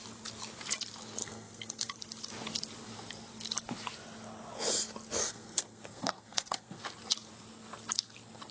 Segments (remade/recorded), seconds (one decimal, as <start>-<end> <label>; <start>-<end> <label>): 0.0-1.2 recorded; 1.2-1.9 remade; 1.9-5.2 recorded; 5.2-6.8 remade; 6.8-8.5 recorded